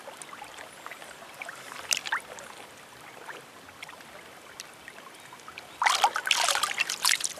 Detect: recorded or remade recorded